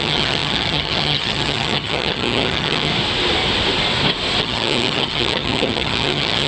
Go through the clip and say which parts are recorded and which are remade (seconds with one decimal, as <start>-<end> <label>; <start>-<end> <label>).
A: 0.0-2.9 remade; 2.9-4.4 recorded; 4.4-6.5 remade